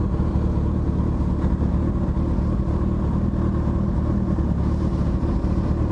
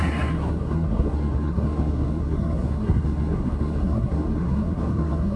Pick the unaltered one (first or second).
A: first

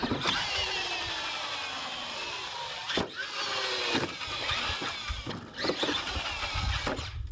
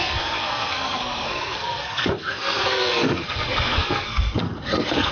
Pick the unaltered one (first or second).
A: first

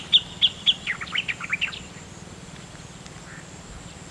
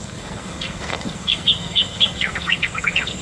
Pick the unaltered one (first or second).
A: first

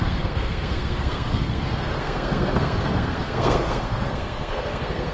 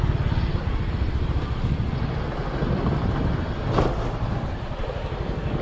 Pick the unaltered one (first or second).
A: second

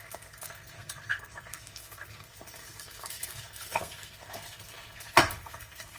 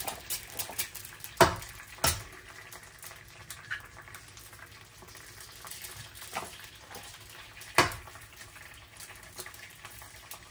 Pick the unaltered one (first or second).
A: second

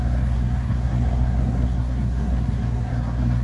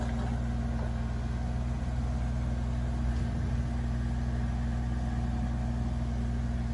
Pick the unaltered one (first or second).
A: second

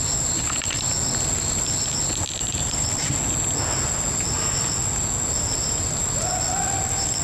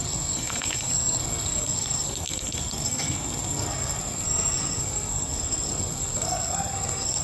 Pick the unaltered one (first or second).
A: first